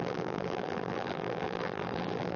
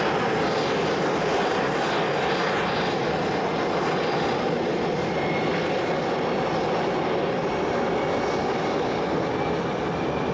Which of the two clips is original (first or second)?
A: second